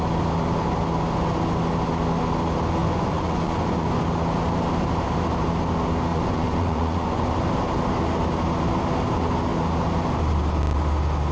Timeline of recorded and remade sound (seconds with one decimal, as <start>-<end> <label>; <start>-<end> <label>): 0.0-2.8 recorded; 2.8-4.0 remade; 4.0-6.1 recorded; 6.1-7.3 remade; 7.3-11.3 recorded